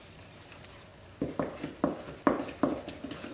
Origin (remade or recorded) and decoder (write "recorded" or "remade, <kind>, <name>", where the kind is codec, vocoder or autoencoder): recorded